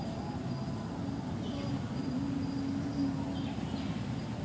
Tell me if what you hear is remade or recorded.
recorded